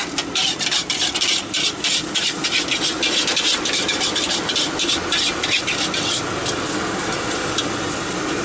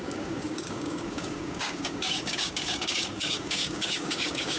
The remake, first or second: second